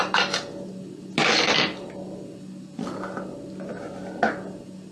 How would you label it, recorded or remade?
recorded